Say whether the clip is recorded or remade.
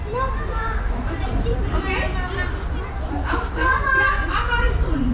recorded